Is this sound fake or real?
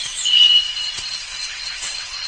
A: fake